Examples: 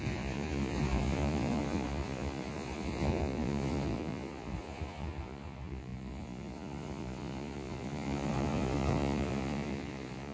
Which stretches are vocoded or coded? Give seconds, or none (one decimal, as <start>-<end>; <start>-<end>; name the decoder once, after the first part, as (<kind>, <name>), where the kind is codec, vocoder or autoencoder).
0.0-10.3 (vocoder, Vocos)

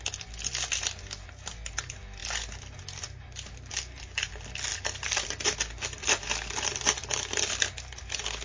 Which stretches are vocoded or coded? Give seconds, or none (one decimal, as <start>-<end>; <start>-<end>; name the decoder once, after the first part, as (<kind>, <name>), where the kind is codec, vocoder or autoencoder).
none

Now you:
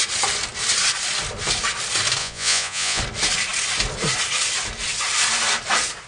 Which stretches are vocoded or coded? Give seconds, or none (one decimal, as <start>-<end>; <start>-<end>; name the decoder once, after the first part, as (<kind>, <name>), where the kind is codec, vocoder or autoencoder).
2.2-3.0 (vocoder, Vocos)

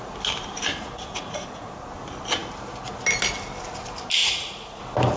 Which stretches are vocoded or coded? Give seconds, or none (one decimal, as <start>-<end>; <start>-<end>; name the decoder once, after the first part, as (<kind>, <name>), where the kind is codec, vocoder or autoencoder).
0.7-1.9 (vocoder, Vocos); 4.2-4.8

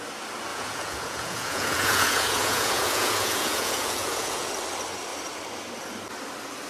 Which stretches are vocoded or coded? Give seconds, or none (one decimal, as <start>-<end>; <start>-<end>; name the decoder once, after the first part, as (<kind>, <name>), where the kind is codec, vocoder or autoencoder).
0.5-4.5 (vocoder, Vocos)

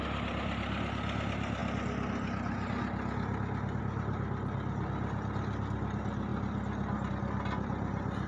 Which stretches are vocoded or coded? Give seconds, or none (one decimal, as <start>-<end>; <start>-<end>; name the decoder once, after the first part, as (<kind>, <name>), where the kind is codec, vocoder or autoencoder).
none

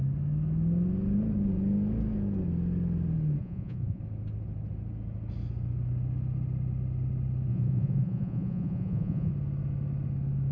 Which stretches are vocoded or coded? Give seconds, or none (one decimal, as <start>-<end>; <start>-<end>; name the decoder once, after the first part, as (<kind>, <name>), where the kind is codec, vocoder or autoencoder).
3.4-4.0 (vocoder, Vocos); 7.5-9.3